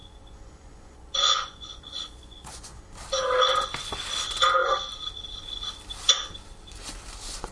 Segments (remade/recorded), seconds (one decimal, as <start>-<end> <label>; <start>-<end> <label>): 0.0-2.8 remade; 2.8-7.5 recorded